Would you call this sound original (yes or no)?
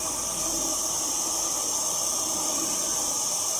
yes